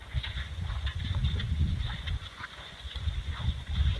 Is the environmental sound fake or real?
fake